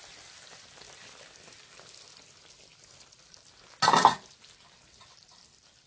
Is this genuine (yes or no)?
yes